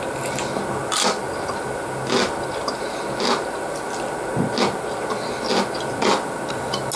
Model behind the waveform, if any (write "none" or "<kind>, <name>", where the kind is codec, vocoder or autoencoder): none